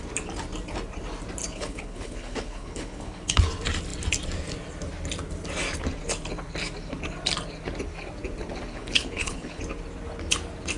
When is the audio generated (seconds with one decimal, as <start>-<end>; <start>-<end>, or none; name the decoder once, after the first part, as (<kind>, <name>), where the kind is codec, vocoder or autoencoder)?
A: 1.4-3.4 (codec, HILCodec); 8.7-9.6